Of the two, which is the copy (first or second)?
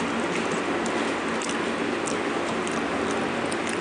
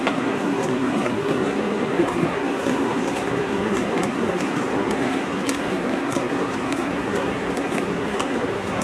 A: second